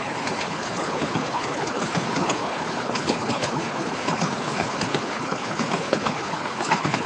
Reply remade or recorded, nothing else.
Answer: remade